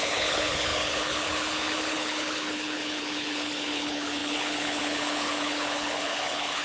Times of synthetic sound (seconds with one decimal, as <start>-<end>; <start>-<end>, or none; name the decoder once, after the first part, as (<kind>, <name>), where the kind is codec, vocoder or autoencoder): 0.0-6.6 (codec, HILCodec)